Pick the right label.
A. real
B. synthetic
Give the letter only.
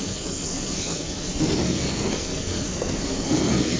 B